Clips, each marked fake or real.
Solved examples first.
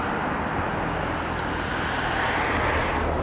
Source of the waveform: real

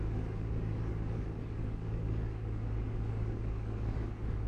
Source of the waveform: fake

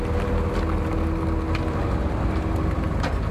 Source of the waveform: real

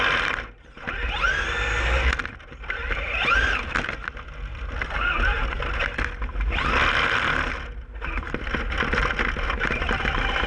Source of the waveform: real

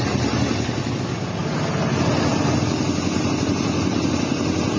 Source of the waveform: real